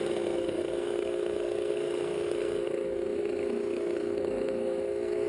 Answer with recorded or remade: remade